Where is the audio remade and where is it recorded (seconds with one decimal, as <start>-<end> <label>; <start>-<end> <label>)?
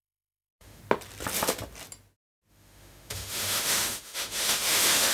0.0-0.8 remade; 0.8-2.5 recorded; 2.5-5.1 remade